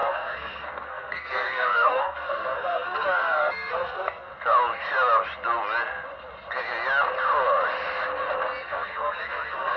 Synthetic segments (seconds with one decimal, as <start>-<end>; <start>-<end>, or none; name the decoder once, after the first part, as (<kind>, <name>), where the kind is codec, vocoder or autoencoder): 0.0-4.3 (codec, SNAC); 8.6-9.8